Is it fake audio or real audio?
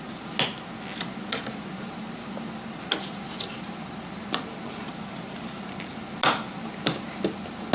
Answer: real